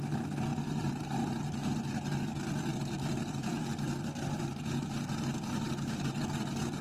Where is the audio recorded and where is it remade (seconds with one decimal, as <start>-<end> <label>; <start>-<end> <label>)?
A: 0.0-0.5 recorded; 0.5-1.7 remade; 1.7-2.7 recorded; 2.7-6.1 remade; 6.1-6.8 recorded